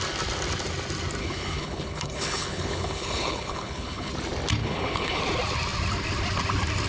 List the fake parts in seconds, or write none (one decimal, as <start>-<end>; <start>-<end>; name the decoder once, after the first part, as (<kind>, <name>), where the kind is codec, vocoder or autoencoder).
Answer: 1.2-4.1 (codec, HILCodec); 4.6-5.2